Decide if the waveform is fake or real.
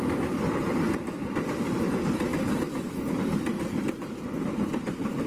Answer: real